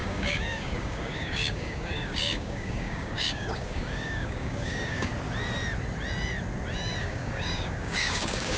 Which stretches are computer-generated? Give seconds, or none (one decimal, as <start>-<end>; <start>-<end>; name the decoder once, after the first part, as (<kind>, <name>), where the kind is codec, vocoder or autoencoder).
0.0-5.1 (codec, DAC); 7.0-8.6